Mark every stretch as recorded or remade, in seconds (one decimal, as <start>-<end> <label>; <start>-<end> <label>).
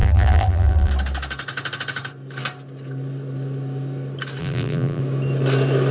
0.0-0.9 remade; 0.9-4.4 recorded; 4.4-5.0 remade; 5.0-5.9 recorded